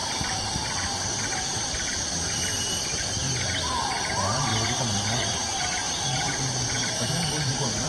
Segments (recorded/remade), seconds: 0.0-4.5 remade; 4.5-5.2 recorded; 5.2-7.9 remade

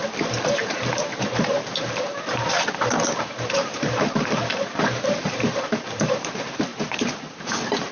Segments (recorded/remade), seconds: 0.0-7.9 remade

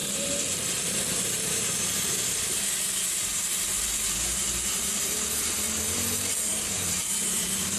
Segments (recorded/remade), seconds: 0.0-7.8 remade